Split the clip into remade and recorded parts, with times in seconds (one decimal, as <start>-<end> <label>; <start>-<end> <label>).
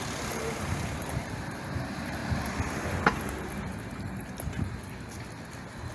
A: 0.0-2.2 remade; 2.2-5.9 recorded